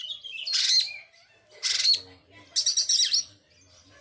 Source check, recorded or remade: recorded